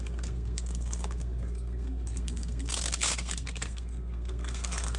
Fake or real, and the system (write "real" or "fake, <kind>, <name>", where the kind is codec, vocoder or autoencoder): fake, codec, SNAC